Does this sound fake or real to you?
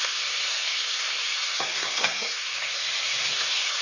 fake